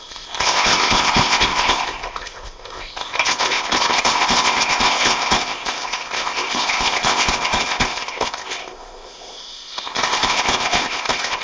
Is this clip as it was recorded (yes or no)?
no